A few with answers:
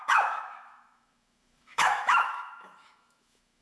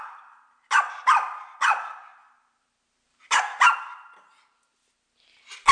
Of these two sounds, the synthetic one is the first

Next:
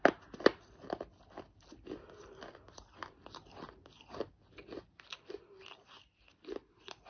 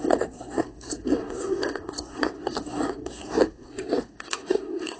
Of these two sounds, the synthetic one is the second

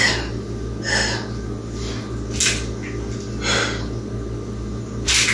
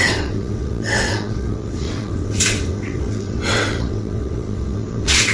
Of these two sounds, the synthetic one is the second